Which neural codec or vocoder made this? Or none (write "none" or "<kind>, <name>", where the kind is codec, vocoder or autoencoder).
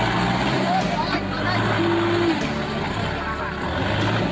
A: none